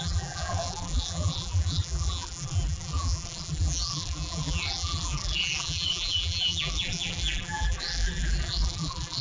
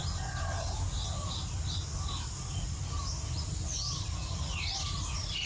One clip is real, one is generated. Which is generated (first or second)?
first